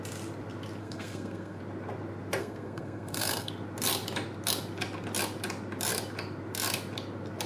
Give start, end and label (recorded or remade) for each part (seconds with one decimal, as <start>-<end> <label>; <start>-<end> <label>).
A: 0.0-0.8 recorded; 0.8-1.6 remade; 1.6-2.4 recorded; 2.4-3.5 remade; 3.5-7.5 recorded